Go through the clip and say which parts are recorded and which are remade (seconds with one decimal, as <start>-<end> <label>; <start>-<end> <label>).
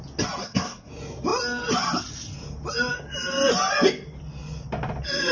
0.0-0.4 recorded; 0.4-0.9 remade; 0.9-5.3 recorded